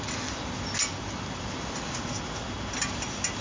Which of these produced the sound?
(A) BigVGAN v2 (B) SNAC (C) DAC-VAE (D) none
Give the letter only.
D